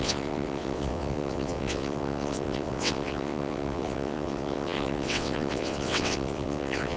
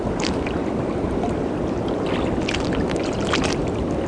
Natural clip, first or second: second